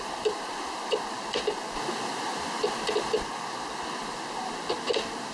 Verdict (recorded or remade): recorded